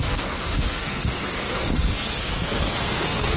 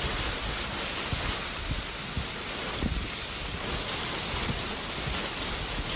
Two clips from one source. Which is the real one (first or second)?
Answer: second